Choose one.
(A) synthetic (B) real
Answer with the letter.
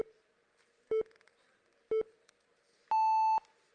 B